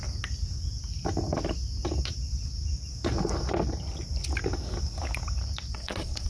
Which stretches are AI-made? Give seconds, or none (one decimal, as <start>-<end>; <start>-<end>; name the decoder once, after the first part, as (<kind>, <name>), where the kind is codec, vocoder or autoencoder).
5.7-6.3 (vocoder, Vocos)